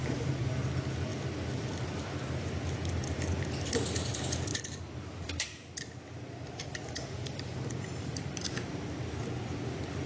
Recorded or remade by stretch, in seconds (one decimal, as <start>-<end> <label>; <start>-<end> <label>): 0.0-0.5 remade; 0.5-4.5 recorded; 4.5-9.0 remade; 9.0-10.1 recorded